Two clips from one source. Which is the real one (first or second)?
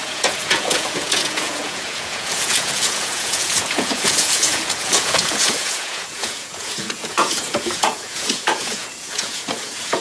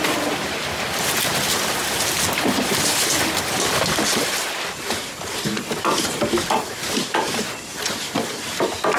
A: second